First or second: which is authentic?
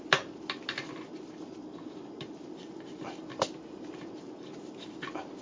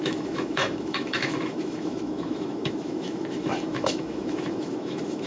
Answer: first